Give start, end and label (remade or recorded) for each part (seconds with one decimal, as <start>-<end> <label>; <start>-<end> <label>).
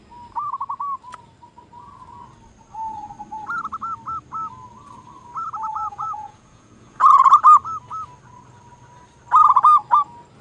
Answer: 0.0-5.7 recorded; 5.7-7.3 remade; 7.3-10.4 recorded